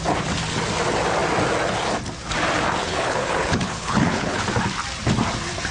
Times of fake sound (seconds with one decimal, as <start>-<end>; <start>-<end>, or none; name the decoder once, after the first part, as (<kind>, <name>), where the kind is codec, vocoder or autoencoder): 2.8-4.4 (codec, HILCodec)